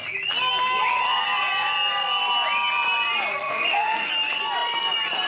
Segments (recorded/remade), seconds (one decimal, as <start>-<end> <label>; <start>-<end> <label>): 0.0-3.3 recorded; 3.3-4.1 remade; 4.1-5.3 recorded